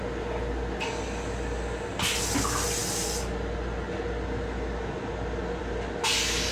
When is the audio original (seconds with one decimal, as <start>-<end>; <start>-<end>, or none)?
0.0-6.5